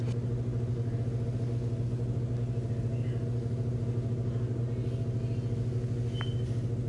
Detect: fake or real real